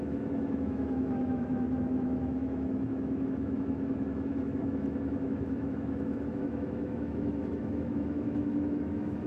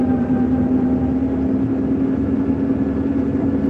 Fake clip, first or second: first